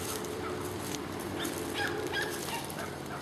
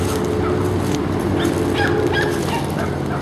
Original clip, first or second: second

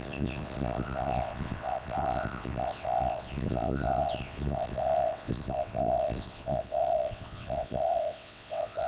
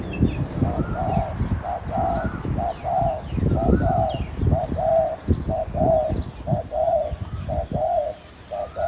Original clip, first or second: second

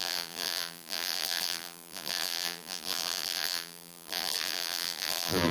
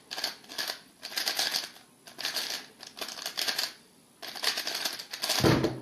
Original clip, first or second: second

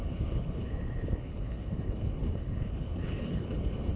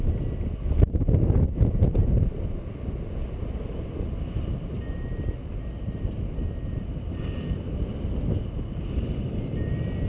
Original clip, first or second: second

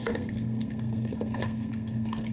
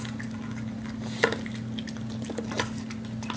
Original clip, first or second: second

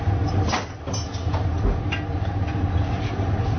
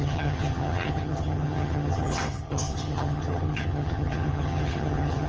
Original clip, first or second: first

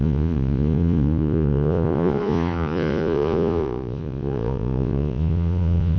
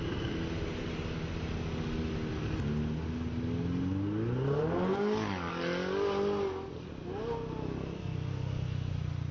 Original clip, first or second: second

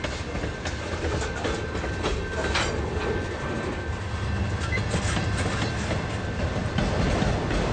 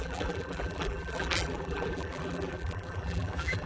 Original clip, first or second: first